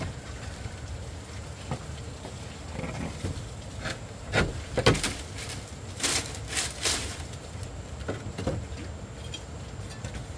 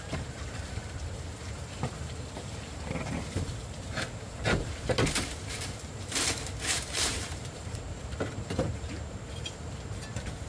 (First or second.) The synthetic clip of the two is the second